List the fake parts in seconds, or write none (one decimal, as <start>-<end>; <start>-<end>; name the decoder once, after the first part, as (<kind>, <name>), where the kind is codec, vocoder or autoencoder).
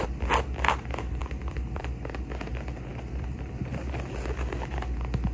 1.2-1.8 (vocoder, BigVGAN v2)